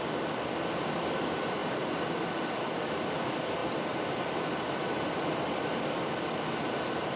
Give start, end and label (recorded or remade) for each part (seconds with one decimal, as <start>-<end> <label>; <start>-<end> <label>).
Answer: 0.0-1.6 recorded; 1.6-2.2 remade; 2.2-3.6 recorded; 3.6-4.2 remade; 4.2-7.2 recorded